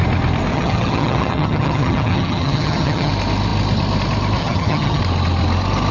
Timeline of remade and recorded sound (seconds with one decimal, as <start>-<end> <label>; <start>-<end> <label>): 0.0-0.5 recorded; 0.5-3.1 remade; 3.1-4.4 recorded; 4.4-5.0 remade; 5.0-5.9 recorded